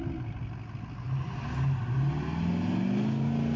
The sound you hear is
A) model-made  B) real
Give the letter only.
B